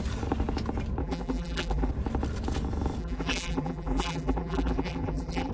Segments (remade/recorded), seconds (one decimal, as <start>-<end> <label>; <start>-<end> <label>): 0.0-1.0 recorded; 1.0-1.9 remade; 1.9-3.0 recorded; 3.0-5.5 remade